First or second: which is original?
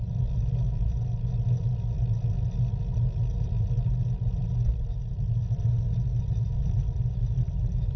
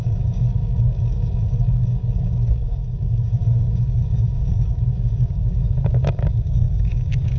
first